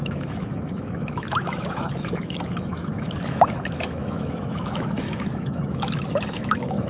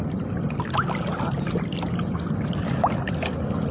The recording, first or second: second